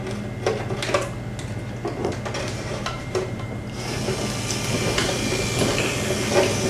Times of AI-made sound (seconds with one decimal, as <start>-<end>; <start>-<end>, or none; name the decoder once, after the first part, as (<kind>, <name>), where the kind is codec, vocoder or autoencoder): 2.0-4.0 (vocoder, BigVGAN v2); 4.7-5.3